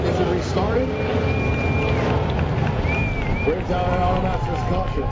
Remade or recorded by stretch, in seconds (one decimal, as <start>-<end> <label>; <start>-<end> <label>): 0.0-5.1 recorded